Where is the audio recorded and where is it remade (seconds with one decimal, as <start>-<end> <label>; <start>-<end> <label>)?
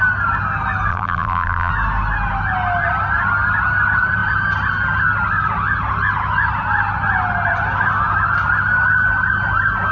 0.0-0.9 recorded; 0.9-1.7 remade; 1.7-9.9 recorded